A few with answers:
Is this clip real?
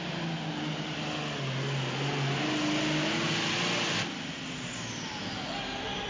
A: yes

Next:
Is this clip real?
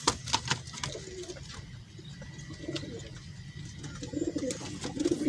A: yes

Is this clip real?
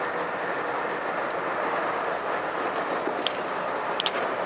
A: yes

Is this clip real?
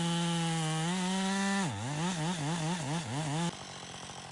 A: yes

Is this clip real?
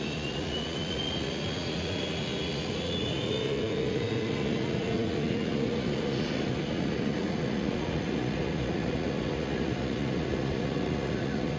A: no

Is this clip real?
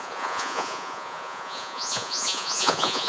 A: no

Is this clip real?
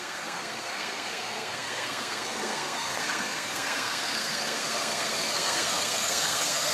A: no